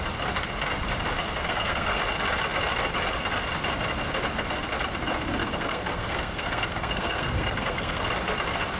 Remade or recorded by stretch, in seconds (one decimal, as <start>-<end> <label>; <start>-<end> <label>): 0.0-1.4 recorded; 1.4-2.0 remade; 2.0-5.4 recorded; 5.4-8.0 remade; 8.0-8.8 recorded